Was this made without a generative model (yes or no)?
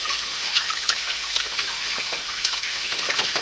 no